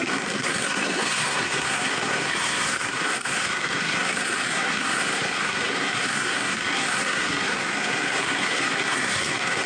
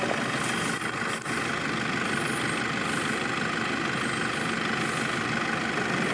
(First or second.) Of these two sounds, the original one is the second